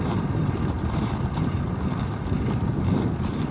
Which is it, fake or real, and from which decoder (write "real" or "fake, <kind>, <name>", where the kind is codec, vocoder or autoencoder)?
fake, vocoder, BigVGAN v2